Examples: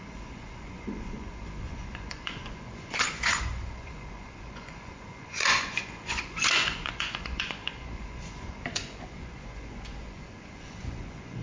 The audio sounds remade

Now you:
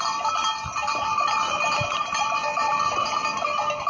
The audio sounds recorded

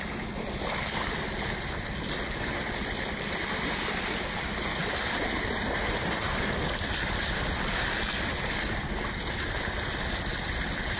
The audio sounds recorded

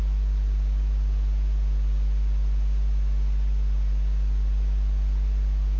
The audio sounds recorded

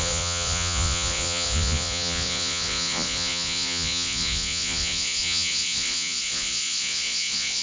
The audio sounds remade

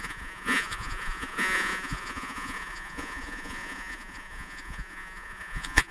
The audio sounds remade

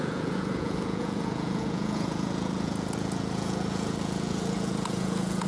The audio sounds remade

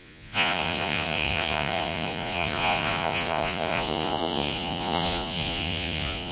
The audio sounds remade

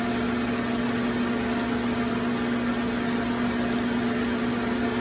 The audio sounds recorded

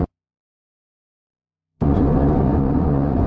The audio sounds remade